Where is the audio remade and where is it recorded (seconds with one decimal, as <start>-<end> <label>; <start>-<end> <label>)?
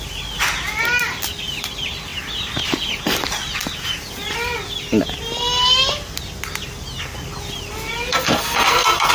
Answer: 0.0-8.1 recorded; 8.1-9.1 remade